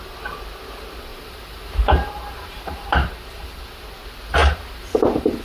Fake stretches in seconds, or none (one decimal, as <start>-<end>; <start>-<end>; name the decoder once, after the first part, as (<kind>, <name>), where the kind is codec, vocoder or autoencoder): 1.1-3.6 (vocoder, BigVGAN v2); 4.4-5.4